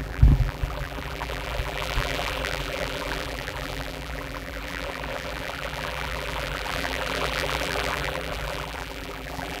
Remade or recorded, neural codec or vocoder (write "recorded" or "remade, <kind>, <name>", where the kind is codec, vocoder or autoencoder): remade, vocoder, BigVGAN v2